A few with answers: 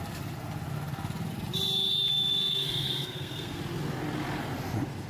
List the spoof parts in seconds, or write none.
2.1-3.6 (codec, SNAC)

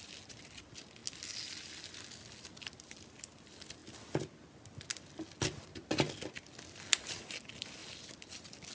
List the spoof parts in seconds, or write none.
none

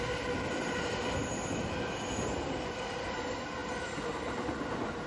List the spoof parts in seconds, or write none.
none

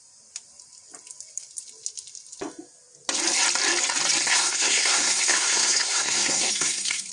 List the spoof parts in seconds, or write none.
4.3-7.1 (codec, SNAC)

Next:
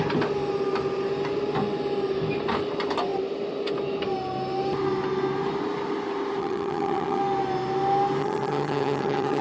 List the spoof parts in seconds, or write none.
6.4-7.2 (vocoder, HiFi-GAN); 8.2-9.4

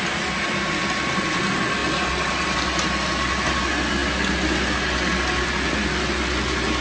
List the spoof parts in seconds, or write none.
none

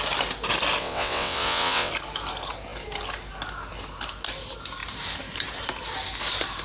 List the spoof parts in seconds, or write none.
0.8-1.9 (vocoder, WaveNeXt)

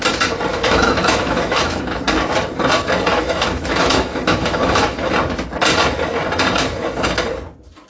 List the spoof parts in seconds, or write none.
0.5-2.0 (autoencoder, DAC-VAE); 3.1-5.1